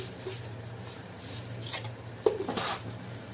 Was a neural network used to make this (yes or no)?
yes